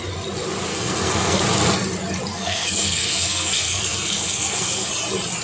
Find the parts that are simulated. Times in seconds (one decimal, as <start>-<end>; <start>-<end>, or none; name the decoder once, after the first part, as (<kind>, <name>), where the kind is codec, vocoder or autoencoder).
0.7-1.4 (codec, SNAC); 2.3-4.9